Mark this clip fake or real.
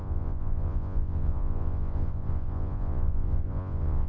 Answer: fake